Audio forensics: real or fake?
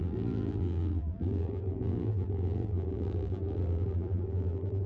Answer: fake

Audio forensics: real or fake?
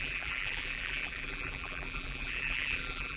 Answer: fake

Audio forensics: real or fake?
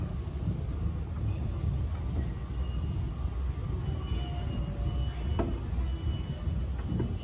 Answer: real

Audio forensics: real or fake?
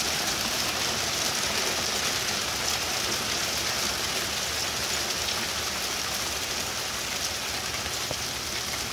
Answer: real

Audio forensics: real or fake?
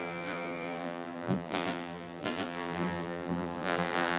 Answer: fake